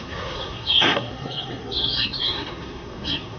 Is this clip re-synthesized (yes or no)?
yes